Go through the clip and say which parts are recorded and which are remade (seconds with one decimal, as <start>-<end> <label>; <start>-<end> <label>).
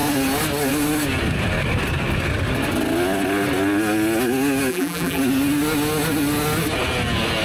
0.0-4.7 recorded; 4.7-5.2 remade; 5.2-7.4 recorded